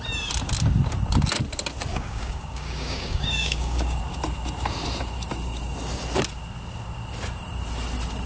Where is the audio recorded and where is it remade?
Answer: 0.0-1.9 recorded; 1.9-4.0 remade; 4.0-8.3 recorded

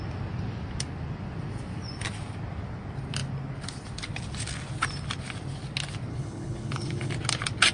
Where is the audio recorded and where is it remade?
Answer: 0.0-6.1 recorded; 6.1-7.1 remade; 7.1-7.7 recorded

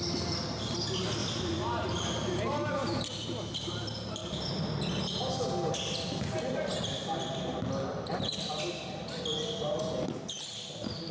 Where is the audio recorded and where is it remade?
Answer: 0.0-1.2 recorded; 1.2-3.5 remade; 3.5-4.2 recorded; 4.2-5.0 remade; 5.0-11.1 recorded

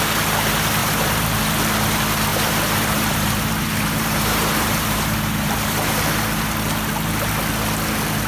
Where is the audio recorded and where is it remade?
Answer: 0.0-0.8 recorded; 0.8-1.4 remade; 1.4-2.3 recorded; 2.3-5.9 remade; 5.9-8.3 recorded

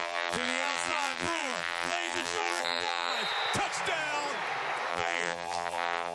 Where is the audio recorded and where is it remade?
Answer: 0.0-3.1 remade; 3.1-4.9 recorded; 4.9-6.1 remade

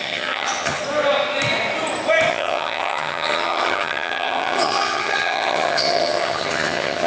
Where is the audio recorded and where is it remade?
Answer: 0.0-0.8 remade; 0.8-2.3 recorded; 2.3-7.1 remade